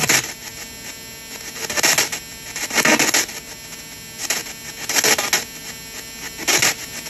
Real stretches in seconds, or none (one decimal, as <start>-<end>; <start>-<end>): 0.0-7.1